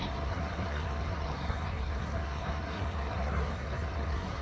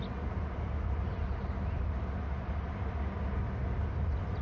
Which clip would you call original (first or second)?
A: second